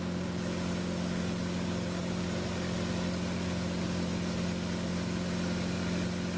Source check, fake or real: real